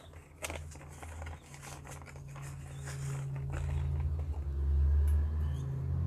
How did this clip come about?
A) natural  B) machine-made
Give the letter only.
A